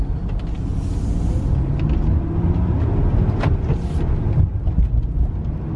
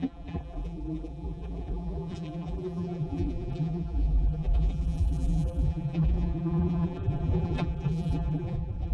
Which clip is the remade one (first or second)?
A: second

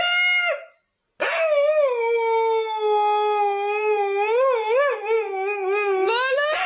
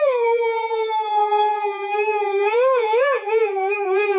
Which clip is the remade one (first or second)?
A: second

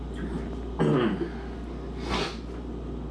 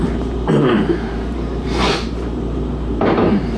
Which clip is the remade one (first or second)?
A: second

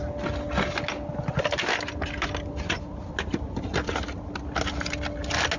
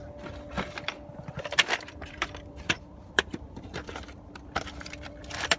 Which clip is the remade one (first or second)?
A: second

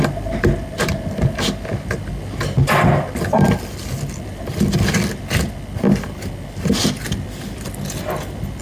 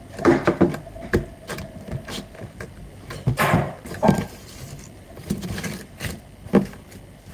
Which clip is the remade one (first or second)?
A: second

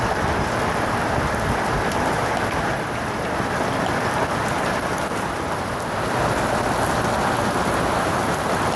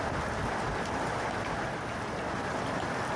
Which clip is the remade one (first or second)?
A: second